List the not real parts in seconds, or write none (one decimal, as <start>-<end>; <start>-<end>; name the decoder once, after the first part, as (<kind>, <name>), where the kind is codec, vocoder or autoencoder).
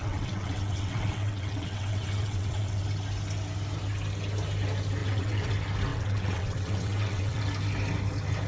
0.0-2.8 (vocoder, WaveNeXt); 5.0-5.5; 5.9-7.4